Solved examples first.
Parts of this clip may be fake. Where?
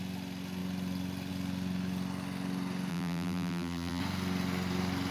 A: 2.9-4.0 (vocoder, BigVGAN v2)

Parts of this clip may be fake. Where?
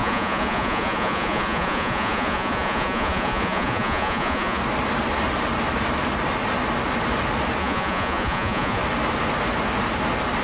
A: 0.0-4.6 (vocoder, Vocos); 7.6-8.8